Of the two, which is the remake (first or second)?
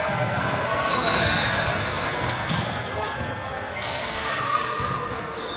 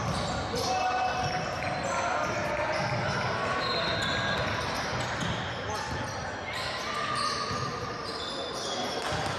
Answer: first